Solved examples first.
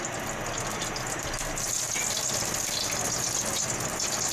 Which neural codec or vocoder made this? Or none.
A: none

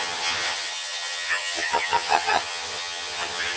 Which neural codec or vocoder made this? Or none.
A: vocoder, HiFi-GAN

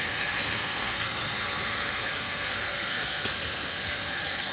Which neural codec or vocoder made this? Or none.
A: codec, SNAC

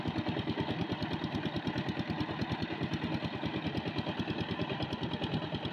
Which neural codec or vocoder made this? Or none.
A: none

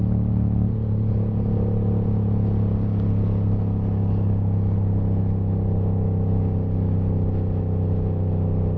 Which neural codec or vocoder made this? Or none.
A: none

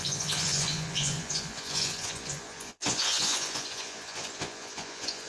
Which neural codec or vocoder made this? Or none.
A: vocoder, Vocos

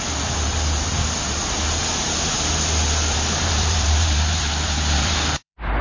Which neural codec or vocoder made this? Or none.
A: vocoder, BigVGAN v2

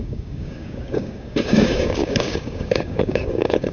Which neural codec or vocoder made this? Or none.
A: codec, DAC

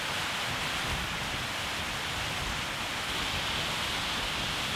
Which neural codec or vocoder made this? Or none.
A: none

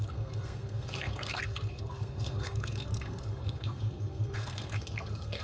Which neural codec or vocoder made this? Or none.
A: codec, SNAC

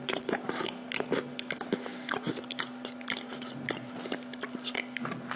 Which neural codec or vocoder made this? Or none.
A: none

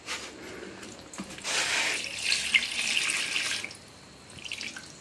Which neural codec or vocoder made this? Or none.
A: none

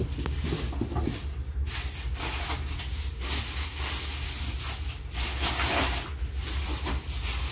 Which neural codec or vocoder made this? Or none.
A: none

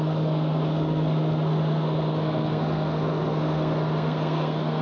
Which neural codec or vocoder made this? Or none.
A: codec, SNAC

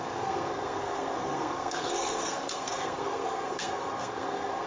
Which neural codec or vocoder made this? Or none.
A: codec, SNAC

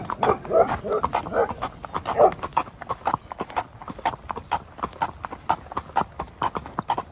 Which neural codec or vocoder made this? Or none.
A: none